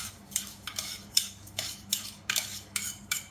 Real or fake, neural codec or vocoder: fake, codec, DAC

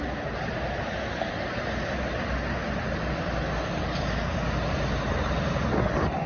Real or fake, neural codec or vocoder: real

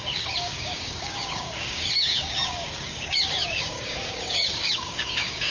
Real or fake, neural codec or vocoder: fake, codec, DAC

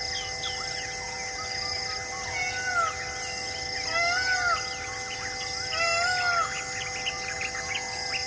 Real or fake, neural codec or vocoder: real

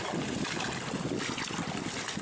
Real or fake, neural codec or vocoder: real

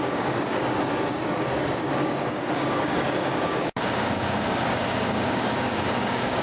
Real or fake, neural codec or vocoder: fake, codec, DAC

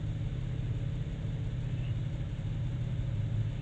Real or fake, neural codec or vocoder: real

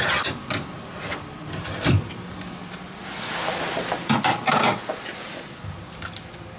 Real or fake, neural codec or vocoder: real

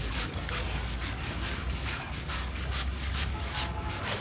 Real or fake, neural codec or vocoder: fake, codec, DAC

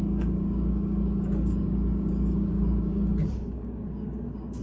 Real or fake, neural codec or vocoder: fake, codec, DAC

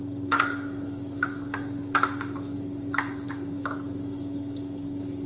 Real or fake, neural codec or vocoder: fake, codec, DAC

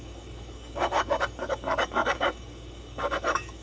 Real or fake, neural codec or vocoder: fake, codec, DAC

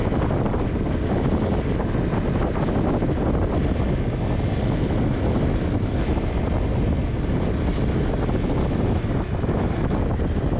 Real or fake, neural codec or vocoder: real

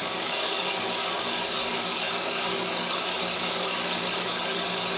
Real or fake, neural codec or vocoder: fake, codec, DAC